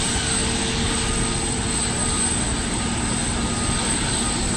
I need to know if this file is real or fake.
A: real